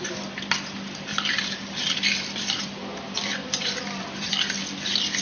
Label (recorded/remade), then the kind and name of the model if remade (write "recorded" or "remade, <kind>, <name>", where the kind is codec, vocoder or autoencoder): remade, vocoder, BigVGAN v2